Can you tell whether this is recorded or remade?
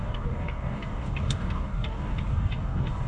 remade